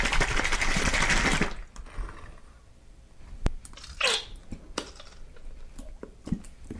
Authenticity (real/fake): real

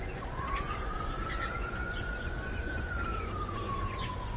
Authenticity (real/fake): fake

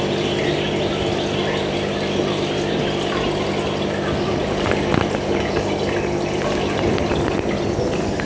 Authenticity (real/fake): real